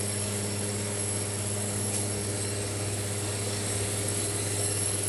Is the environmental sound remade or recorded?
remade